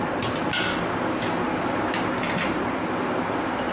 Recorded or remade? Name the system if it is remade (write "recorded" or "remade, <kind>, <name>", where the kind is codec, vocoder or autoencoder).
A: recorded